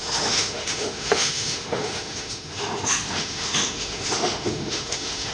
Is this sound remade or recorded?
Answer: remade